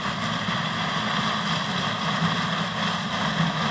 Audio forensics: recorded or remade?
recorded